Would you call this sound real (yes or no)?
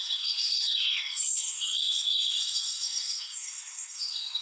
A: no